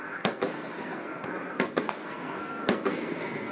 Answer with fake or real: fake